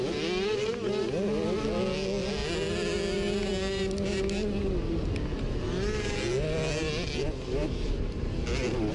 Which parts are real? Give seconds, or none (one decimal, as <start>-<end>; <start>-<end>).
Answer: 0.0-8.9